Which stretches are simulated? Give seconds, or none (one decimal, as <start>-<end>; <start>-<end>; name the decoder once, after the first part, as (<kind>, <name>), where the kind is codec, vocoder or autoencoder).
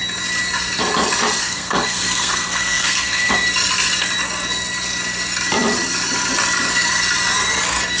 1.4-3.3 (codec, SNAC)